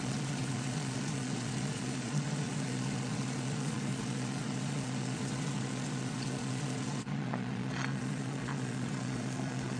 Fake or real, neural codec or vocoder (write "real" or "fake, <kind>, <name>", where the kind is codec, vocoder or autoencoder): fake, vocoder, Vocos